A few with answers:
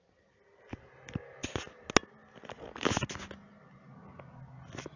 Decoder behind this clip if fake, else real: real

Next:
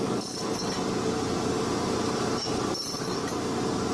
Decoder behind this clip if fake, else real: real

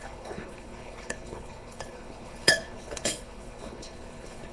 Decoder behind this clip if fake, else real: fake, codec, HILCodec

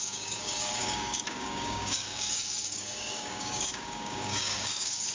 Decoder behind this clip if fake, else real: fake, codec, DAC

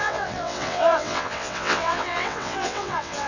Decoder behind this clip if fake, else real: fake, vocoder, WaveNeXt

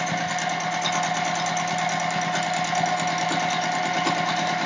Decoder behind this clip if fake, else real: real